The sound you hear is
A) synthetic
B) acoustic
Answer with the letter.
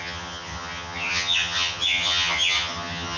A